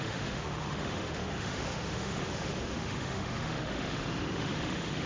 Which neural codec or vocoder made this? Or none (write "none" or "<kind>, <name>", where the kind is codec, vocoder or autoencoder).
autoencoder, DAC-VAE